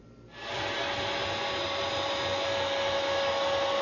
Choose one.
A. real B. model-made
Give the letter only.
A